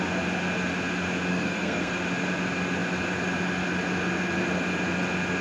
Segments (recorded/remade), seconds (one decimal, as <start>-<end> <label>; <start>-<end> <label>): 0.0-1.3 recorded; 1.3-1.9 remade; 1.9-5.4 recorded